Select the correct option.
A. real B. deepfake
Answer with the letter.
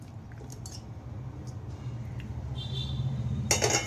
A